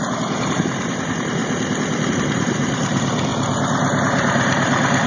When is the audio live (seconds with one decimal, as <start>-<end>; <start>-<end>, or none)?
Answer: 1.4-2.1; 3.3-4.0

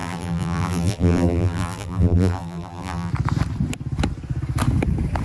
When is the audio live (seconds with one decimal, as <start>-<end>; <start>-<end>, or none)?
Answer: 3.1-5.2

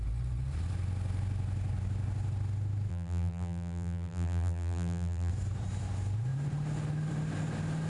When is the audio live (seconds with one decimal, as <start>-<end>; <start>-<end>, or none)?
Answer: 0.0-2.9; 5.3-7.9

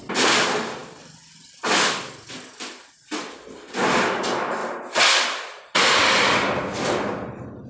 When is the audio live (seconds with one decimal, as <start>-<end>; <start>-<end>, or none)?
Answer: 0.0-0.8; 3.1-4.6; 5.9-7.7